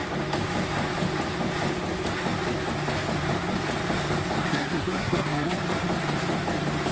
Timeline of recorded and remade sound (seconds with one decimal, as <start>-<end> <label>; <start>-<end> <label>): 0.0-4.5 recorded; 4.5-5.6 remade; 5.6-6.9 recorded